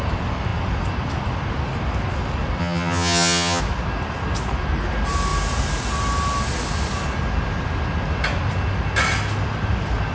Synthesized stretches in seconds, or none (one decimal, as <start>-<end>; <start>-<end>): 2.6-3.6